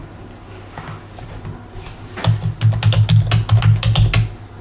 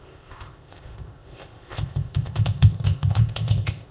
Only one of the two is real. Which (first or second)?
first